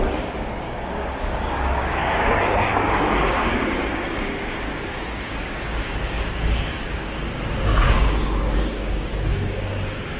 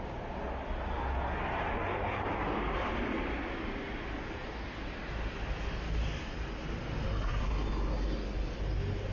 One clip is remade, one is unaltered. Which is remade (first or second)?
first